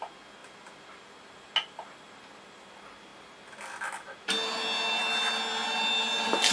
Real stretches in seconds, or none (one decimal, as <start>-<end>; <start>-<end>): 0.0-6.5